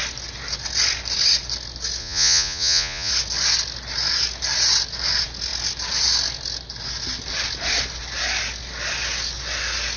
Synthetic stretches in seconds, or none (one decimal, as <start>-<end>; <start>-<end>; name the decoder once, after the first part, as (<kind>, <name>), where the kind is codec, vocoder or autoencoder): 2.0-3.1 (vocoder, Vocos)